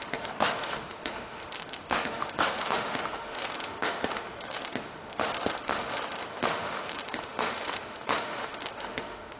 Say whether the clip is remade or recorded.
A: remade